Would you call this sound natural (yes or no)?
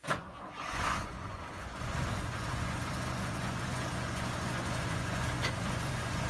no